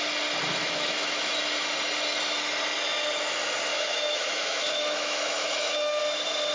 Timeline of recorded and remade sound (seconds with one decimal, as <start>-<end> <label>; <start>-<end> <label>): 0.0-0.6 recorded; 0.6-1.3 remade; 1.3-3.7 recorded; 3.7-6.0 remade; 6.0-6.5 recorded